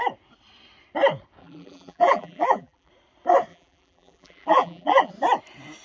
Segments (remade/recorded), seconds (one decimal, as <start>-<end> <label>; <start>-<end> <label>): 0.0-1.4 recorded; 1.4-2.9 remade; 2.9-3.5 recorded; 3.5-5.1 remade; 5.1-5.8 recorded